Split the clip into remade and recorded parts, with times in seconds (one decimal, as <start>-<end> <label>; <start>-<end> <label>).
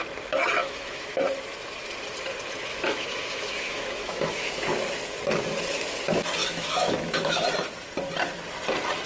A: 0.0-0.6 recorded; 0.6-1.2 remade; 1.2-2.7 recorded; 2.7-4.7 remade; 4.7-6.4 recorded; 6.4-7.4 remade; 7.4-9.1 recorded